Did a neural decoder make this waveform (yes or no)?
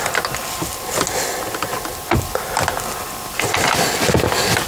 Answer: no